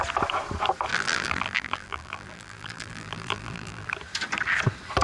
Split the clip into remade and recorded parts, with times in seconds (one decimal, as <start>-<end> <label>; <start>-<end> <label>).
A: 0.0-0.9 recorded; 0.9-3.9 remade; 3.9-5.0 recorded